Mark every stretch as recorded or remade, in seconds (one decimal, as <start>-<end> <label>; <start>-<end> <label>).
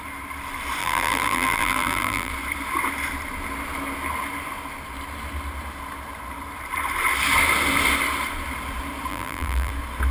0.0-0.8 recorded; 0.8-2.3 remade; 2.3-9.1 recorded; 9.1-9.7 remade; 9.7-10.1 recorded